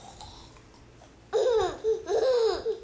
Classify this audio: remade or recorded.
recorded